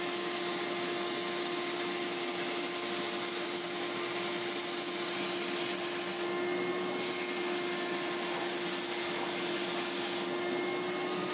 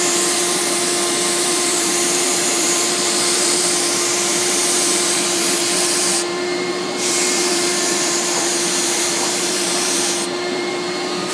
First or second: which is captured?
first